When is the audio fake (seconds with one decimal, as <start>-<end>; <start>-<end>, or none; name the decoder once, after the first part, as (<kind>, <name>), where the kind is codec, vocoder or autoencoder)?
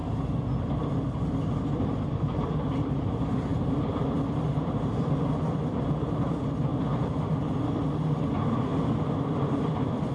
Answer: 0.6-6.7 (vocoder, BigVGAN v2); 7.3-8.7; 9.2-10.1